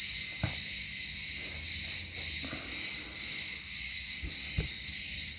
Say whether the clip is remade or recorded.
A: recorded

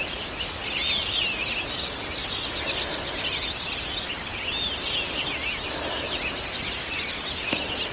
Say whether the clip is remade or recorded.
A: recorded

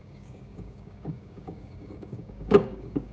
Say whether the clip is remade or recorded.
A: remade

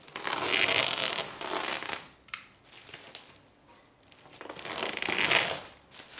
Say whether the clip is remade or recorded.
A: recorded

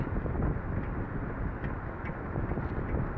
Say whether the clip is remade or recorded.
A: recorded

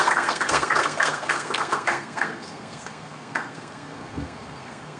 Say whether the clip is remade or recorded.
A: remade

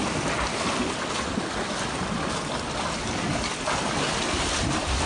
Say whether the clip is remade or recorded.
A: recorded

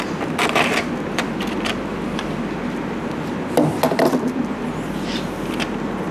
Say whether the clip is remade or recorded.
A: recorded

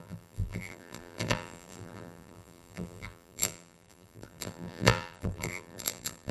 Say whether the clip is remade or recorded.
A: remade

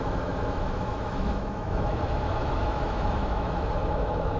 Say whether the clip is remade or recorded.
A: remade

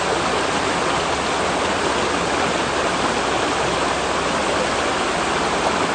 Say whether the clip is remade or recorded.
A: recorded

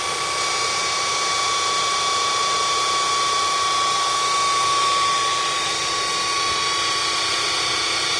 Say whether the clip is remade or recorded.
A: recorded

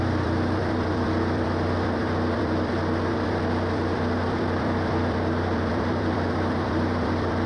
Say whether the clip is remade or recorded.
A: remade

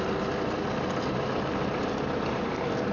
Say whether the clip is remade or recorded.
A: recorded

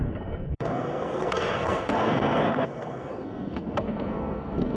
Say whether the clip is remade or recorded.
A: remade